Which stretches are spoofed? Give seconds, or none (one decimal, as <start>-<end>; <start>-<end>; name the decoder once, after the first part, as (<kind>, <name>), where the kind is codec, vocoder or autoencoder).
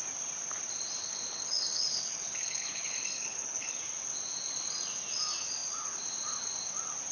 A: 1.0-3.8 (codec, HILCodec)